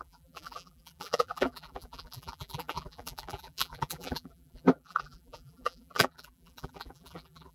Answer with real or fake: fake